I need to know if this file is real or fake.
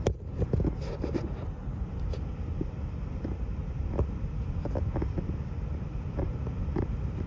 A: real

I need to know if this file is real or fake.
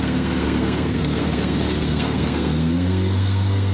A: fake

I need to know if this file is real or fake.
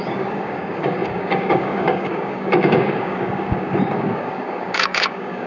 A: fake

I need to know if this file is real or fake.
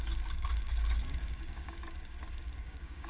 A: fake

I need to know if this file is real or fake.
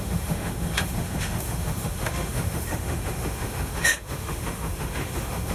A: fake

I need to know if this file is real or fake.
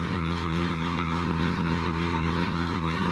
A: fake